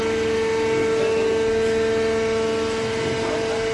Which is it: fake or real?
real